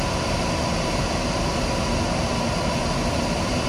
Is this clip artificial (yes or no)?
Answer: no